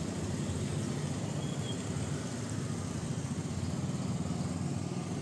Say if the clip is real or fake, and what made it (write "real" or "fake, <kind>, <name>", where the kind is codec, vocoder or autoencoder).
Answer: real